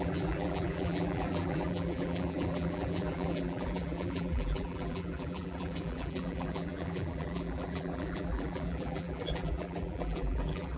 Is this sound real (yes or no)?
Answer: no